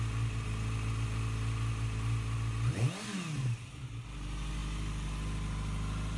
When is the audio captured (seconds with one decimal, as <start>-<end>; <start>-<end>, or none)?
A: 0.0-6.2